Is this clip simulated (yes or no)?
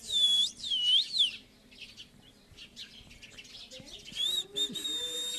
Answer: no